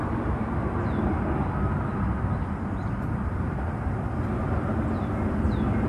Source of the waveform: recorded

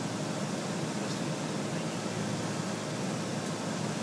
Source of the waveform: recorded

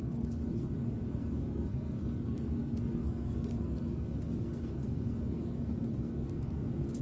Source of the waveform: remade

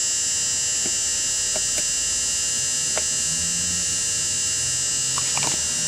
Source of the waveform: recorded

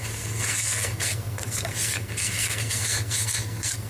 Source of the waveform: remade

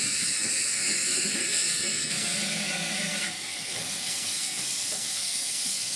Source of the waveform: remade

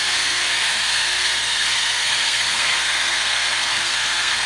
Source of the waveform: remade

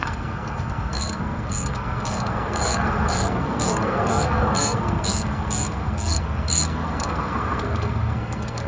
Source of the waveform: remade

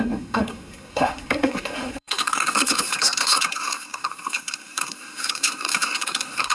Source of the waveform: remade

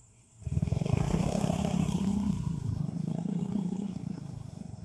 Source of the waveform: remade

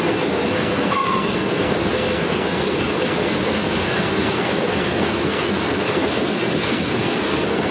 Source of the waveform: remade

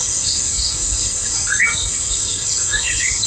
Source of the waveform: remade